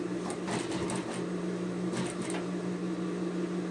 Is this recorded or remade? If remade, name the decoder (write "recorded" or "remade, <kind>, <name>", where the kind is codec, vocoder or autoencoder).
recorded